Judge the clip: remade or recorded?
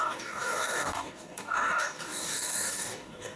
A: remade